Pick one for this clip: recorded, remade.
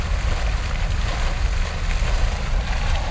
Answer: recorded